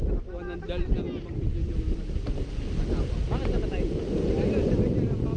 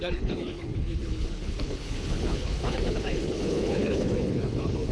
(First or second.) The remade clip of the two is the second